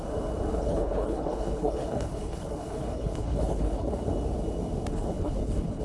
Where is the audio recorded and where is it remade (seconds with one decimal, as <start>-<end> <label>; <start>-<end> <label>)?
0.0-0.5 recorded; 0.5-4.0 remade; 4.0-4.9 recorded; 4.9-5.8 remade